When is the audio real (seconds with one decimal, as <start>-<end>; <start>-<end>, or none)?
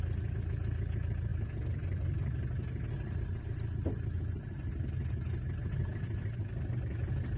0.0-7.4